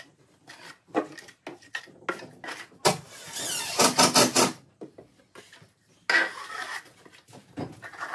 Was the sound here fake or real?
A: real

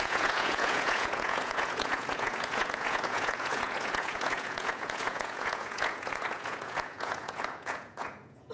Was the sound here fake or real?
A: fake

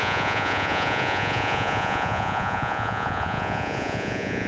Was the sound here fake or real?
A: fake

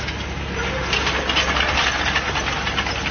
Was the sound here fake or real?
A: real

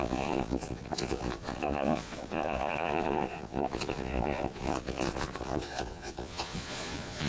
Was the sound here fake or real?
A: fake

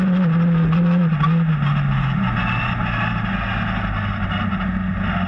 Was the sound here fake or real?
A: real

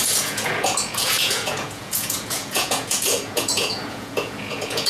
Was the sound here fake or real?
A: fake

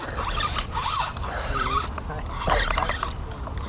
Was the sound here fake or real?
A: real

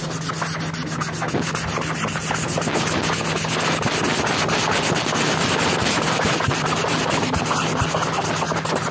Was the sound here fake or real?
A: real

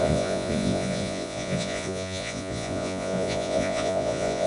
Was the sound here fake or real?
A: fake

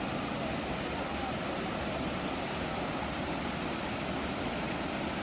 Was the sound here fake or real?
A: real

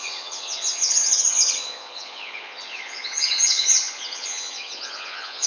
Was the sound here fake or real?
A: fake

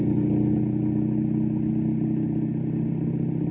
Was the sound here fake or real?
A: real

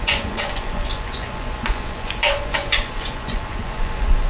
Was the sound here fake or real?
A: fake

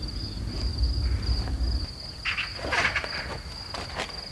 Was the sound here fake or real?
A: real